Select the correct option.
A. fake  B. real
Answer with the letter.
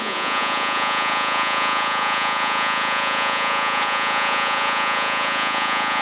A